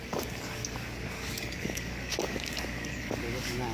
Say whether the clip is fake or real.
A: fake